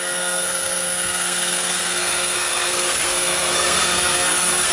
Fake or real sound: fake